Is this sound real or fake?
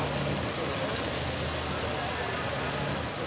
real